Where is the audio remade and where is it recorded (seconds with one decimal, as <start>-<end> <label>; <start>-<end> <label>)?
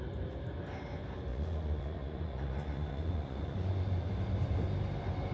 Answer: 0.0-1.3 recorded; 1.3-4.1 remade; 4.1-5.3 recorded